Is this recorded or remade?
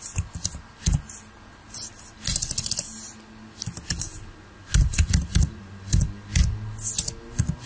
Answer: recorded